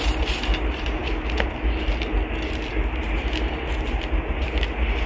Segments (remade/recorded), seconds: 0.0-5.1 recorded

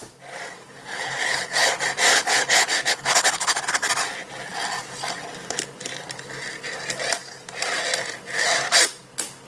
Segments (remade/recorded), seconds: 0.0-0.9 recorded; 0.9-1.7 remade; 1.7-2.1 recorded; 2.1-3.9 remade; 3.9-9.5 recorded